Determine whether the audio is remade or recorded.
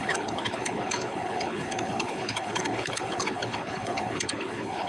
remade